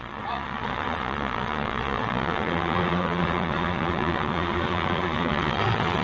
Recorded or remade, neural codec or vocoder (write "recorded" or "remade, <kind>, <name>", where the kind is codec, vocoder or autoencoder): remade, vocoder, Vocos